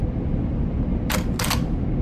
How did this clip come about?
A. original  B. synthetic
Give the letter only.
A